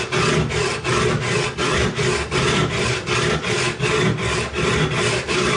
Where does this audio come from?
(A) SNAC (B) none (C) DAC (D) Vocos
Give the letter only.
B